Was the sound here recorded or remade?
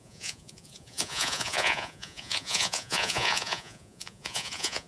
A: remade